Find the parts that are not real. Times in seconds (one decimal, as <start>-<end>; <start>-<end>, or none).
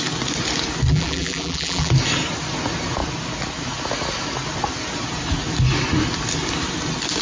0.9-1.9